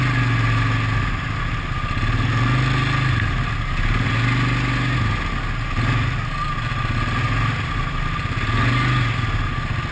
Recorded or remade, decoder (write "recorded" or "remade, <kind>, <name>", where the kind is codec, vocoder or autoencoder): recorded